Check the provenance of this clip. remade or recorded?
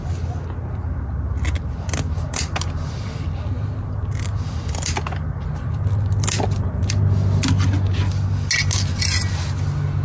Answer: recorded